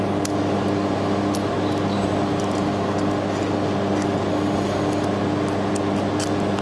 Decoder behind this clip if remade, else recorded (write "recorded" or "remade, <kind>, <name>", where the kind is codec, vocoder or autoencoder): recorded